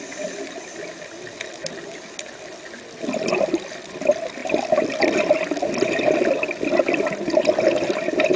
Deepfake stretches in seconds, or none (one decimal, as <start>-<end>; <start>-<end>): none